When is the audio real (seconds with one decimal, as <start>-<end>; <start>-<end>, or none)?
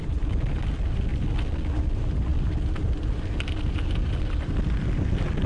0.0-5.5